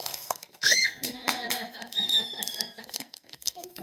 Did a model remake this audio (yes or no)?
yes